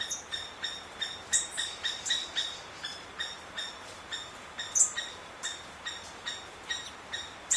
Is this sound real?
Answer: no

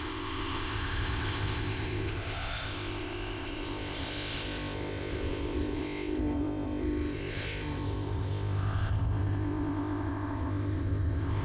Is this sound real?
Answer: no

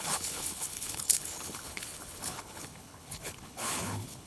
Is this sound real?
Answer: no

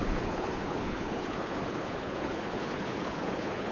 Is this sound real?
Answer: no